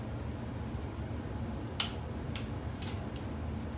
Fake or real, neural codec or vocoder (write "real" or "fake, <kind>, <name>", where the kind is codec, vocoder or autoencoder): real